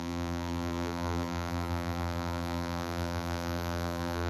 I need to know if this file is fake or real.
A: fake